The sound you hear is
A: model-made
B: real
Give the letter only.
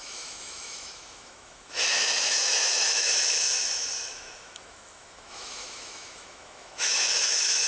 A